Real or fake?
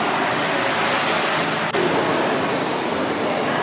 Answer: real